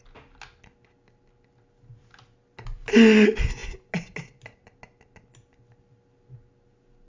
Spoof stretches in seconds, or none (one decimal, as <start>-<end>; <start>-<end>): none